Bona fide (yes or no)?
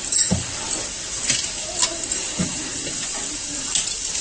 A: yes